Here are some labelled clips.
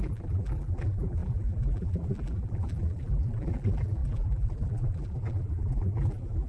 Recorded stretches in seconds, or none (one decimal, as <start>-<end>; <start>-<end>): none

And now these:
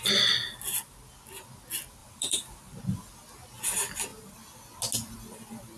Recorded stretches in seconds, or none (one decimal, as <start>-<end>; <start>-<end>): 0.0-2.0; 2.8-5.8

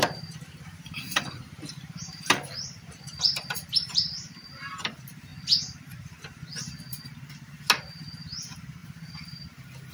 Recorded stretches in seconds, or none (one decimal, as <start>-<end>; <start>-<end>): 5.3-7.9